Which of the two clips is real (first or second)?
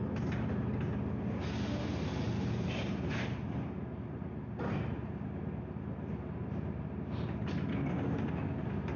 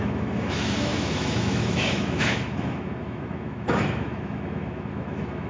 first